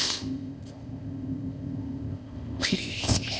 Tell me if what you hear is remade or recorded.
remade